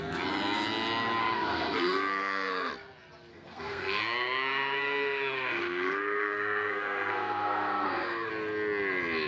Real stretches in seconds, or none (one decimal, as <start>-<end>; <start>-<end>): 0.0-1.2; 2.7-3.3; 8.3-9.3